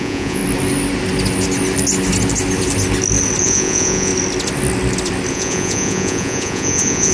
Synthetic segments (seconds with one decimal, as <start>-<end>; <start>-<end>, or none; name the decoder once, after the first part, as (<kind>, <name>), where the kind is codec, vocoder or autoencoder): 0.0-0.4 (vocoder, Vocos); 3.4-4.1; 5.3-7.1